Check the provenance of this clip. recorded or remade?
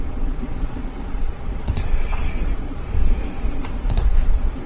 remade